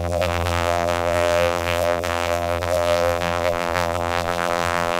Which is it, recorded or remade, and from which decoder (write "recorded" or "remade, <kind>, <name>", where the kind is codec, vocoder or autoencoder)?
remade, vocoder, BigVGAN v2